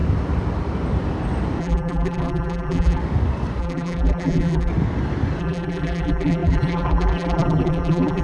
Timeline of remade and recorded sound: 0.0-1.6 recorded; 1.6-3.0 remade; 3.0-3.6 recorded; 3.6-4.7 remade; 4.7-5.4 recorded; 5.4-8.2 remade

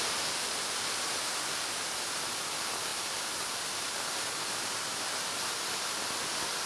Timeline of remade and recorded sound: 0.0-6.7 recorded

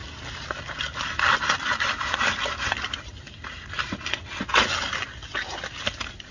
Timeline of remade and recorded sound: 0.0-6.3 recorded

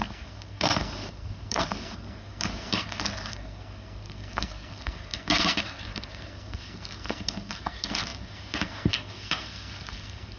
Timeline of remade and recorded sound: 0.0-10.4 remade